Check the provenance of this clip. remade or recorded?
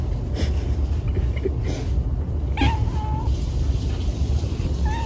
recorded